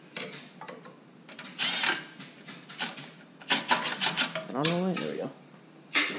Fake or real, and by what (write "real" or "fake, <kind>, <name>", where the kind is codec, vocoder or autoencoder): real